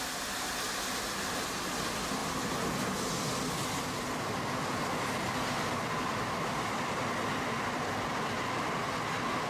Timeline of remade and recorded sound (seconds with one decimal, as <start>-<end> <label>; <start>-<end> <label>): 0.0-9.5 recorded